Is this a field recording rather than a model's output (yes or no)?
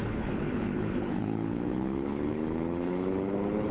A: no